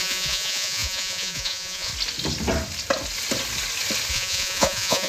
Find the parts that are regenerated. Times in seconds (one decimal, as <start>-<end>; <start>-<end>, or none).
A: 0.0-1.9; 4.1-5.1